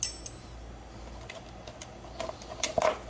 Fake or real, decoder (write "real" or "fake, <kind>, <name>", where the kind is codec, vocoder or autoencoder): real